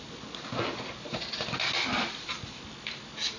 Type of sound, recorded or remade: recorded